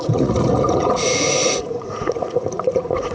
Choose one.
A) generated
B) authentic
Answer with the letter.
A